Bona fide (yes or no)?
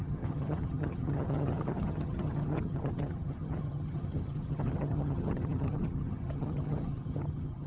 no